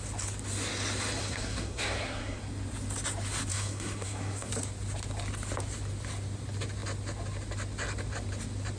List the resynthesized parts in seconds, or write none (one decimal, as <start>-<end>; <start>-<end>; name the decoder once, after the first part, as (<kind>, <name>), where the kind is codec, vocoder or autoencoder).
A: 1.2-2.4 (codec, SNAC); 3.5-4.5